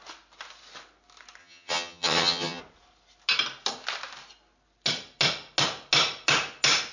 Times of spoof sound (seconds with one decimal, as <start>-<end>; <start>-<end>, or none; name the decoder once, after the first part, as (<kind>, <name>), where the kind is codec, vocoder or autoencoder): 1.4-2.6 (vocoder, HiFi-GAN)